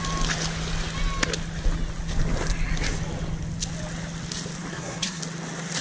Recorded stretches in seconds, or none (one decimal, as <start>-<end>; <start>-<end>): 0.0-4.7; 5.2-5.8